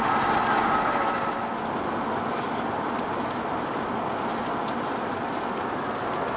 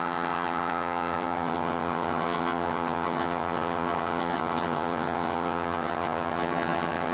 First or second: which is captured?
first